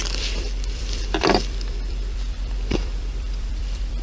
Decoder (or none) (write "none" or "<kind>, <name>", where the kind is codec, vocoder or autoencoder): vocoder, BigVGAN v2